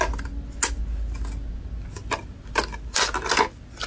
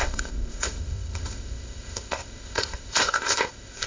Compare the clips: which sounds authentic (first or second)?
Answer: first